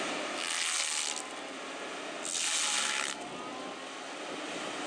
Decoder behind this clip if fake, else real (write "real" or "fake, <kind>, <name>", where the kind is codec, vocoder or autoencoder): real